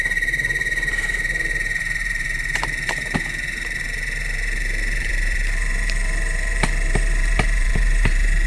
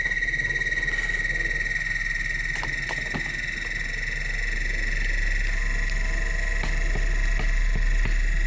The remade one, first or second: first